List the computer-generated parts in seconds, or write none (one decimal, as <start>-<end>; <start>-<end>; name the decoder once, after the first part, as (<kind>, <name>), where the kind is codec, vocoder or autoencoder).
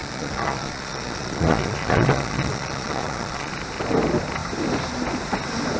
0.0-3.5 (vocoder, Vocos)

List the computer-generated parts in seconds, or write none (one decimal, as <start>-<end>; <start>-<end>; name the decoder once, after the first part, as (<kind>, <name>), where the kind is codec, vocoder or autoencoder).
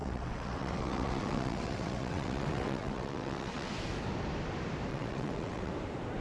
0.0-3.7 (vocoder, WaveNeXt); 4.9-5.7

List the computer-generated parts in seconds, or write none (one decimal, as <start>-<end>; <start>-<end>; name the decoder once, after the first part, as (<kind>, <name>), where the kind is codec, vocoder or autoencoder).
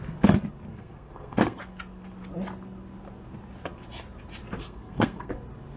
0.7-1.6 (codec, SNAC); 4.6-5.3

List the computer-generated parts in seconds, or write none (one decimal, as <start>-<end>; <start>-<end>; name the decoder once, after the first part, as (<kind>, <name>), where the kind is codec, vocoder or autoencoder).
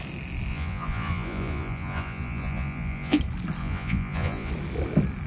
0.5-3.2 (vocoder, Vocos); 3.6-4.5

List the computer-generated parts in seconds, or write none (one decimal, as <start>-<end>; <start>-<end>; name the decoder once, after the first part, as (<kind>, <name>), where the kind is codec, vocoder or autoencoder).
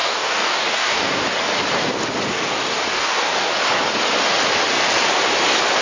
0.0-1.2 (codec, DAC); 2.9-3.5